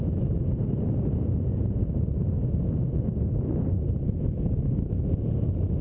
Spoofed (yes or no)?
no